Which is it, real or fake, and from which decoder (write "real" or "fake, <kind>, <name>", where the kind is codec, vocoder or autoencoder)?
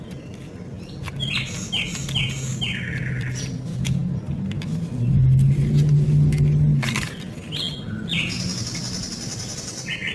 real